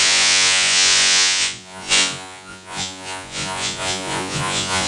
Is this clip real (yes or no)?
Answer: no